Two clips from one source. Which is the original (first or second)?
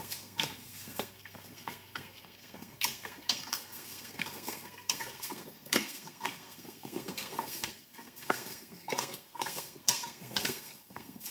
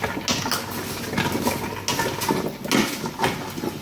second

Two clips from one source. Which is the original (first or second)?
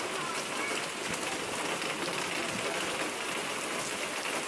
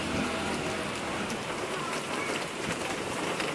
first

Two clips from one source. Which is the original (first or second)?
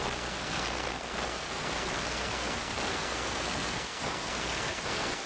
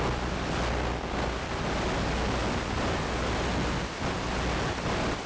second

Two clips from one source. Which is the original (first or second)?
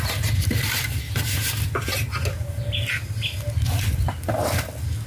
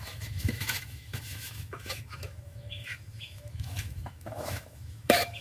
first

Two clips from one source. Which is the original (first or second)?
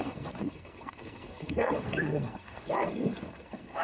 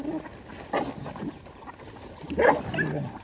second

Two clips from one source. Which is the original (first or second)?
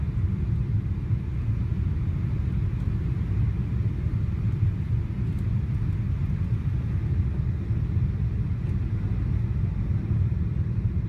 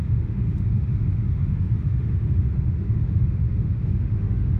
first